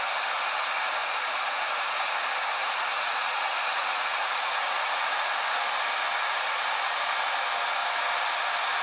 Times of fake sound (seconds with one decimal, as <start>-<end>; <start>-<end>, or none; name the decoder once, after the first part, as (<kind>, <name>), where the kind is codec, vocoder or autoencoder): 1.0-2.1 (vocoder, Vocos); 2.6-5.3